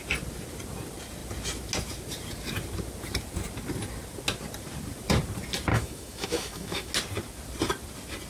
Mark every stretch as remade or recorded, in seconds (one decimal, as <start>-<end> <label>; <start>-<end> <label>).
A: 0.0-5.7 recorded; 5.7-6.9 remade; 6.9-8.3 recorded